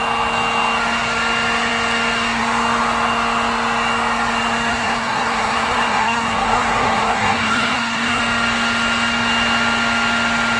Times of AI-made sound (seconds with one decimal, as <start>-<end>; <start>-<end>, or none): 4.7-8.2